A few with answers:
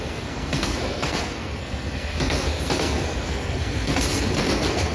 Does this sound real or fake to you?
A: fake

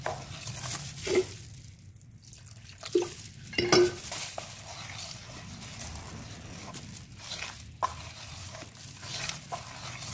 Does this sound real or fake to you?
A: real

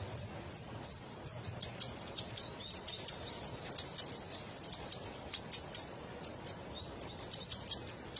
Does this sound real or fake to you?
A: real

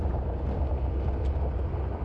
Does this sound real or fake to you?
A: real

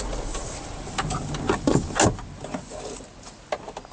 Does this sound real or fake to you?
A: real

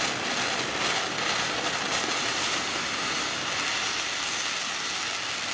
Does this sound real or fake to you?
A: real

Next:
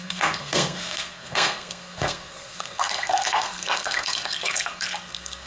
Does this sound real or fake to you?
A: fake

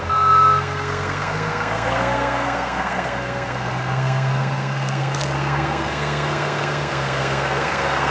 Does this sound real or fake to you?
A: fake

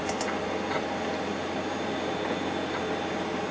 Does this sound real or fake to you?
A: real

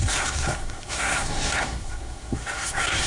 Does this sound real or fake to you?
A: fake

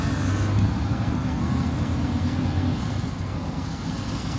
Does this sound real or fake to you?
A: fake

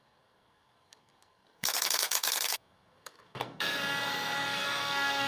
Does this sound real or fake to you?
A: fake